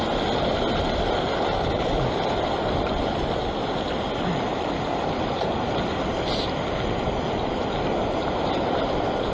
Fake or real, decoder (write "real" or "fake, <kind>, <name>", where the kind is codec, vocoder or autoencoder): real